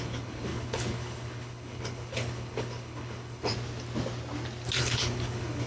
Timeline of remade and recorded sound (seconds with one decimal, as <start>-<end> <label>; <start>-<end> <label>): 0.0-3.5 remade; 3.5-4.8 recorded; 4.8-5.7 remade